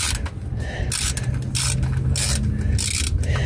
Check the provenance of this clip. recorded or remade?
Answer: recorded